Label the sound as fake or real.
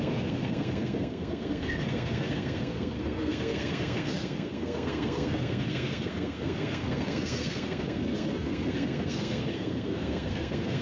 fake